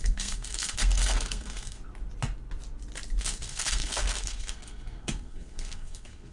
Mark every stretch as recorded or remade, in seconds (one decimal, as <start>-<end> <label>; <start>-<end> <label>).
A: 0.0-1.8 remade; 1.8-3.2 recorded; 3.2-6.3 remade